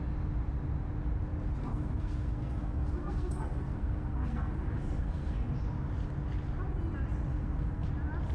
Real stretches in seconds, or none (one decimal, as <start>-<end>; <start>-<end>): 0.0-1.6; 5.5-7.3; 7.9-8.3